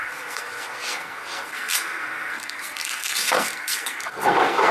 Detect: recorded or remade remade